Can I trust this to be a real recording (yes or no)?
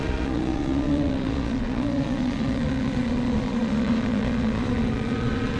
no